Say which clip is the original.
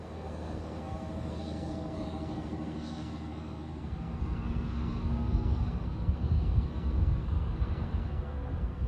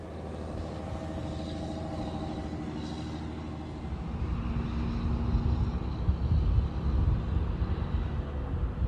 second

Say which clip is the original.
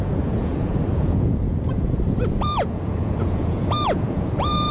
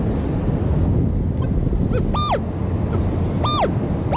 second